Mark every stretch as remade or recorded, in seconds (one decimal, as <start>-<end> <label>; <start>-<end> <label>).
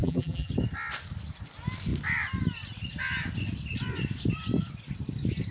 0.0-0.5 remade; 0.5-5.5 recorded